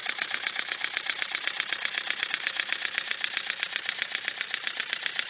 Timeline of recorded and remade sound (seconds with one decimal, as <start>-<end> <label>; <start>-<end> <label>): 0.0-5.3 recorded